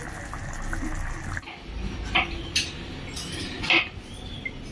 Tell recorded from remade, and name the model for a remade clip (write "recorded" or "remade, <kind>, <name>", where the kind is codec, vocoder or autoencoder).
recorded